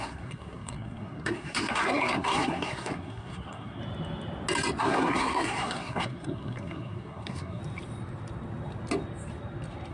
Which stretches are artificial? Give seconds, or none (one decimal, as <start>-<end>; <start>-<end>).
0.0-3.8; 4.8-7.6